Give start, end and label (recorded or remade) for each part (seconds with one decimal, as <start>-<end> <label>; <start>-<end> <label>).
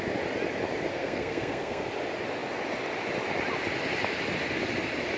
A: 0.0-0.9 recorded; 0.9-1.9 remade; 1.9-5.2 recorded